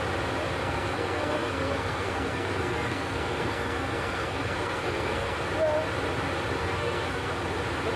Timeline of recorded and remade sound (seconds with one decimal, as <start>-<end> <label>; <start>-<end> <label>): 0.0-0.6 recorded; 0.6-5.4 remade; 5.4-6.6 recorded; 6.6-7.3 remade; 7.3-8.0 recorded